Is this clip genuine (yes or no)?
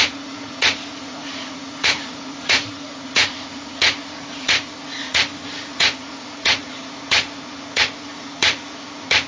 no